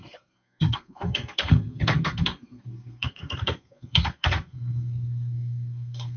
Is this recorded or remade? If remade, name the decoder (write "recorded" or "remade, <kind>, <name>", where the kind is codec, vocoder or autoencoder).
remade, codec, SNAC